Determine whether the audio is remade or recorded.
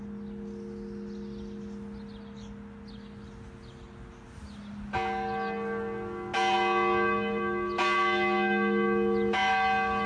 recorded